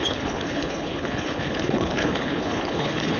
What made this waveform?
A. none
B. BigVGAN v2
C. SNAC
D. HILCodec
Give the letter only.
D